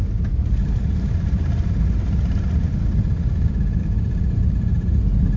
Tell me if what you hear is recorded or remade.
recorded